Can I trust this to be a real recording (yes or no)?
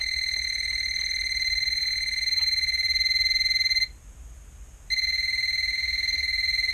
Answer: yes